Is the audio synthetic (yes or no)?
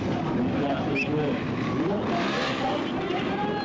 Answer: no